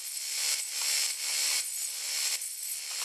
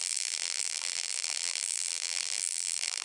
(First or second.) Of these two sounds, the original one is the first